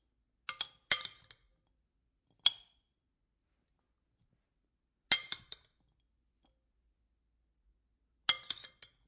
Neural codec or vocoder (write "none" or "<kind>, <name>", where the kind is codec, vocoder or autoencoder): none